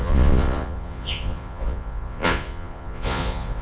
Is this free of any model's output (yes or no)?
no